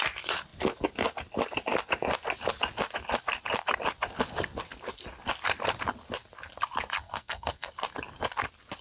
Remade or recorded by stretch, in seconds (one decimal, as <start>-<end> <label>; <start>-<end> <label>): 0.0-7.0 recorded; 7.0-7.7 remade; 7.7-8.8 recorded